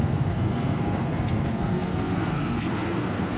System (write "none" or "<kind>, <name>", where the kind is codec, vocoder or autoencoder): codec, SNAC